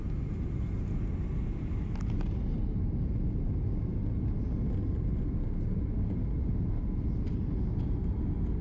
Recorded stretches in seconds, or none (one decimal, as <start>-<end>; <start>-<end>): 0.0-8.6